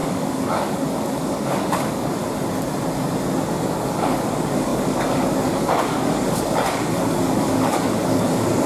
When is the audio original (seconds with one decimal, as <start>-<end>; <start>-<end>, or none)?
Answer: 2.2-3.5